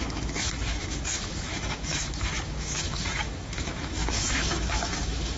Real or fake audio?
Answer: fake